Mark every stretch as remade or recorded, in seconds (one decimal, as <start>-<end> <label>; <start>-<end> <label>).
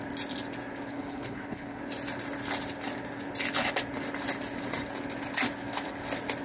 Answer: 0.0-0.9 recorded; 0.9-1.8 remade; 1.8-6.4 recorded